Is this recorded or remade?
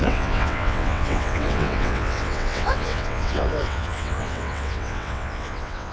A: remade